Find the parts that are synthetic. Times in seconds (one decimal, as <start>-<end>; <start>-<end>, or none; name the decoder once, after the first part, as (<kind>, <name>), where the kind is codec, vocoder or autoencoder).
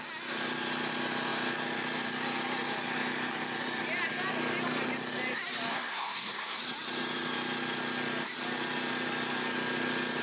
5.7-6.6 (codec, SNAC)